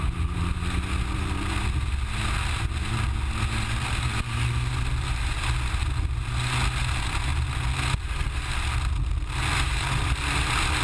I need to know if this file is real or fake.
real